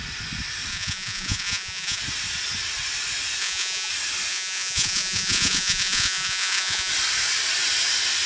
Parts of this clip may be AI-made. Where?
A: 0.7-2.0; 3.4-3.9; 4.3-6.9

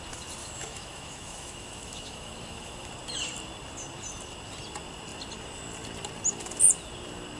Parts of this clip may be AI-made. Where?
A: 0.4-2.9

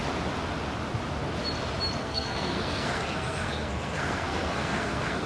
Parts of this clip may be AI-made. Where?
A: 2.0-5.3

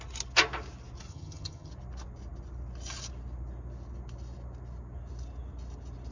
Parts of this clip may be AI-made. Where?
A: 1.1-1.7